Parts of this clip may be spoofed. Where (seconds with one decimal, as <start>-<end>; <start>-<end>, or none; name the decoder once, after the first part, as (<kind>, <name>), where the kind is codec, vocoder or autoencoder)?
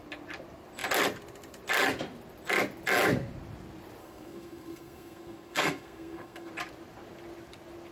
4.0-6.5 (codec, SNAC)